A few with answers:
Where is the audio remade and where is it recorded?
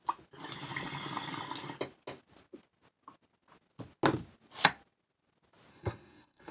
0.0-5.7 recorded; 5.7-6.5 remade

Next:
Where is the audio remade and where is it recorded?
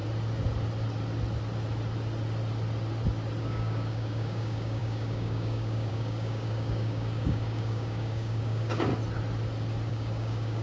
0.0-3.4 recorded; 3.4-8.9 remade; 8.9-9.9 recorded; 9.9-10.6 remade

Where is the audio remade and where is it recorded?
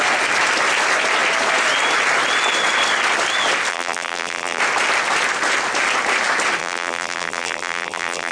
0.0-3.7 recorded; 3.7-4.6 remade; 4.6-6.6 recorded; 6.6-8.3 remade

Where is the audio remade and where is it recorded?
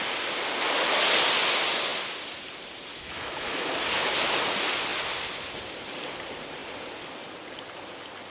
0.0-2.9 recorded; 2.9-3.7 remade; 3.7-8.3 recorded